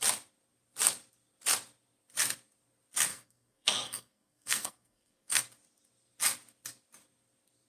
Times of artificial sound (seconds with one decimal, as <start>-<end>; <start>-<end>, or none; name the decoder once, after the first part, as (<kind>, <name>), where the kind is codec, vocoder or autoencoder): 3.1-5.4 (codec, SNAC)